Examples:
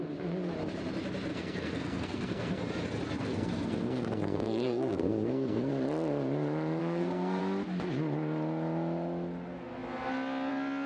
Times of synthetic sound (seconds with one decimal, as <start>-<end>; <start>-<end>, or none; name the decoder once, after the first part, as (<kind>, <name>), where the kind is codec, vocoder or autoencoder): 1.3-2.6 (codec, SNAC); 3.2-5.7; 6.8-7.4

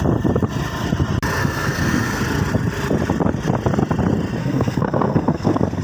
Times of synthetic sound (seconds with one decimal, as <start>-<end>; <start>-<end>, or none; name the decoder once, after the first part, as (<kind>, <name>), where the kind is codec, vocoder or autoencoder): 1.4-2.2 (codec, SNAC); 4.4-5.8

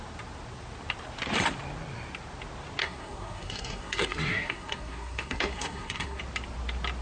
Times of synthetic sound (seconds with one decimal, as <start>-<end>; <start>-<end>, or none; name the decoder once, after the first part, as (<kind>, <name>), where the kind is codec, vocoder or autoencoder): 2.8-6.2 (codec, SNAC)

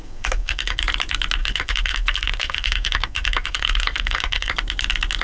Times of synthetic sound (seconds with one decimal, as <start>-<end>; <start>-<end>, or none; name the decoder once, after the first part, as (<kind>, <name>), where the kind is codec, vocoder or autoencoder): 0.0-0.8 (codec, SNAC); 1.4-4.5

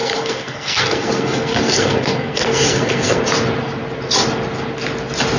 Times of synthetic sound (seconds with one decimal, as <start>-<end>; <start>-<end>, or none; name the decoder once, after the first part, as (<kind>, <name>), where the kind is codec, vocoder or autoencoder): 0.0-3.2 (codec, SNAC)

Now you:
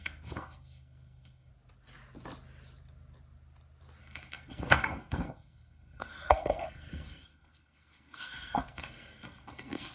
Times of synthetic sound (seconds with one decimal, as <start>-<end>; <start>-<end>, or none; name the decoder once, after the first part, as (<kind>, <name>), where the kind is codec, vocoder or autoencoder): 0.0-1.5 (codec, SNAC); 4.0-9.9

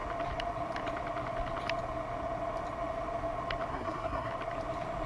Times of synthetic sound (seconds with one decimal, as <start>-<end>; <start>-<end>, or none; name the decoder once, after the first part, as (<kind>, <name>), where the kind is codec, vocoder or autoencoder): 3.7-4.3 (codec, SNAC)

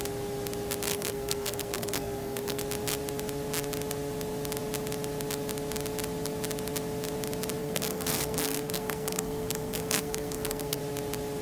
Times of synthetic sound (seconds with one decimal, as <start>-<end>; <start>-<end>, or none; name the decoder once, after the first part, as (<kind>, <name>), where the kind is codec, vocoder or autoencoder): 0.9-2.6 (codec, SNAC); 7.6-10.8